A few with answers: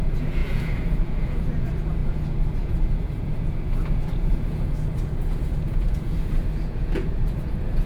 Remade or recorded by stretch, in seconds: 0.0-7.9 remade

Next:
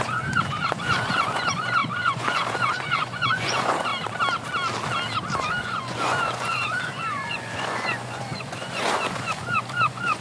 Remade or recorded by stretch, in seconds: 0.0-3.9 remade; 3.9-5.4 recorded; 5.4-10.2 remade

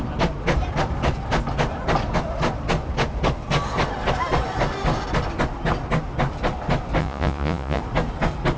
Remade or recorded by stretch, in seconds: 0.0-7.0 recorded; 7.0-7.8 remade; 7.8-8.6 recorded

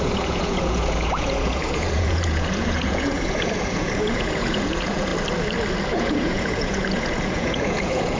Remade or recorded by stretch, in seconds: 0.0-5.1 remade; 5.1-5.9 recorded; 5.9-8.2 remade